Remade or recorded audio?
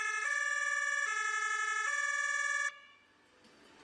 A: recorded